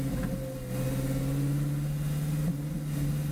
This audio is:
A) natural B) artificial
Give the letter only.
A